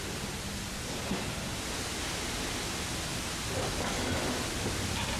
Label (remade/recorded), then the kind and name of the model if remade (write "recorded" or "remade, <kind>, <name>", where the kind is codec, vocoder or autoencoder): recorded